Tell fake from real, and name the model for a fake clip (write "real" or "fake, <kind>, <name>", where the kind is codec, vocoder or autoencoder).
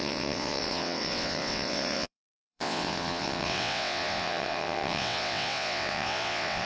fake, vocoder, WaveNeXt